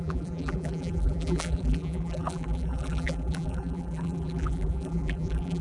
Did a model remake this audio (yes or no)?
yes